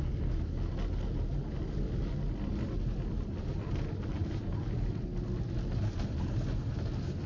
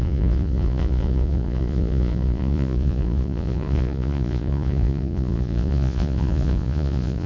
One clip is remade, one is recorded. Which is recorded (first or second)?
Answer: first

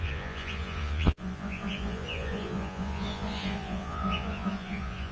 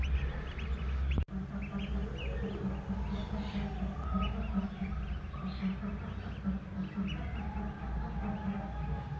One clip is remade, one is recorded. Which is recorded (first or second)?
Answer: second